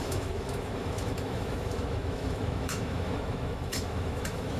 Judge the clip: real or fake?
fake